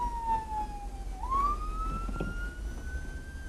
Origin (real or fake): real